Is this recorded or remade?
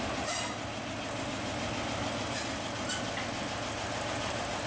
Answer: recorded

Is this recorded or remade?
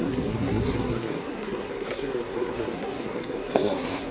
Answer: remade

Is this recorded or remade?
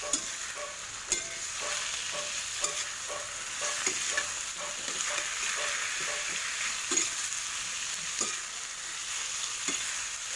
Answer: recorded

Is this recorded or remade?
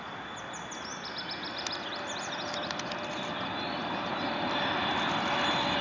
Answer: recorded